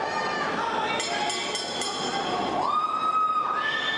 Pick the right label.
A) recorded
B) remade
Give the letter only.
A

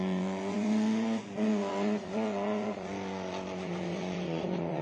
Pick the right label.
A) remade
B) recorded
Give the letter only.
A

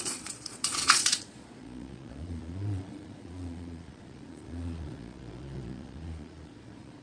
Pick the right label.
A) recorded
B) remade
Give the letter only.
B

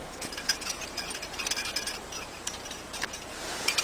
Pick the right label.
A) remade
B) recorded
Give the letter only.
A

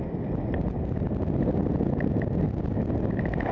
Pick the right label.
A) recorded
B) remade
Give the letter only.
A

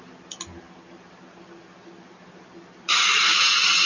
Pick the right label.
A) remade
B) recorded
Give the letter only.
B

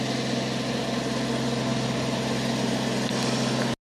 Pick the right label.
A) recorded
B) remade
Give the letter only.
A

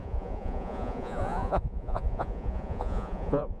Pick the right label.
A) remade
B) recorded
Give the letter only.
A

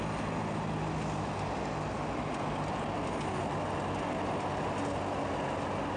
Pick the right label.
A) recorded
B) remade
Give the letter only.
A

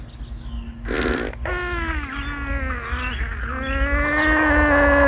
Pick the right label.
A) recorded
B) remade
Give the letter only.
A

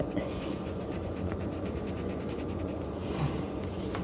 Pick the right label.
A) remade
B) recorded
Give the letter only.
A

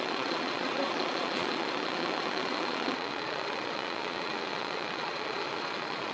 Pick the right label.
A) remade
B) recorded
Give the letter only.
A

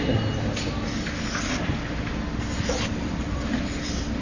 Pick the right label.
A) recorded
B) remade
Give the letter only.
A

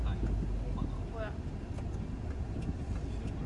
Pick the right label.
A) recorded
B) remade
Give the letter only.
A